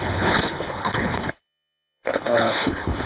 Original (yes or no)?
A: no